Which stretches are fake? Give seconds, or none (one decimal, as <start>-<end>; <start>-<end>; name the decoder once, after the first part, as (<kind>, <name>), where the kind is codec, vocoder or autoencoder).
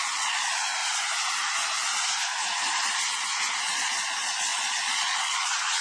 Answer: 0.0-0.8 (vocoder, Vocos); 3.6-5.8